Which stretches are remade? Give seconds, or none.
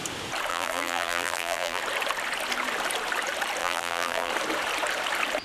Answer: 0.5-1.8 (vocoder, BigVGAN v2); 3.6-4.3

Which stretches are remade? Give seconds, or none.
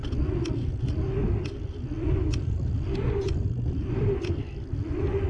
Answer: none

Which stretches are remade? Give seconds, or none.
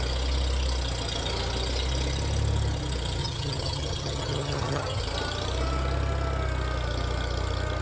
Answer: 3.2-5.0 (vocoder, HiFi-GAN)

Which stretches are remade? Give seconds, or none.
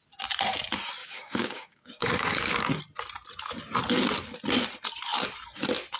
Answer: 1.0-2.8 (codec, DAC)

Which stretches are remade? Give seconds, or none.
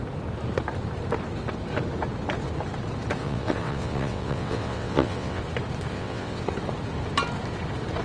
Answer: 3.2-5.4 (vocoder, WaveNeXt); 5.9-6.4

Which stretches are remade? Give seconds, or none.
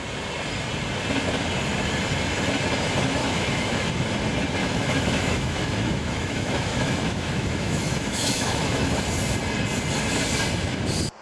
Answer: 3.2-3.8 (autoencoder, DAC-VAE); 4.6-9.0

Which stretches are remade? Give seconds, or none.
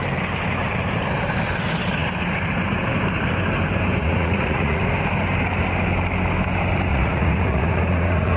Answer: 4.0-4.8 (vocoder, Vocos); 6.9-8.4